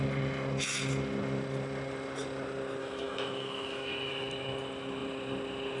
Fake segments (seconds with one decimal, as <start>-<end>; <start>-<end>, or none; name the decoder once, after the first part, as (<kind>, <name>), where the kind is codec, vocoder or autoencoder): 2.8-4.1 (autoencoder, DAC-VAE)